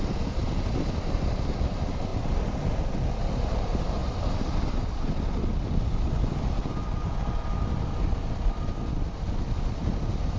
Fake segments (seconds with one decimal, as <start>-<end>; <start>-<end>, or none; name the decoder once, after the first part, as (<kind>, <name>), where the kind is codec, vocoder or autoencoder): none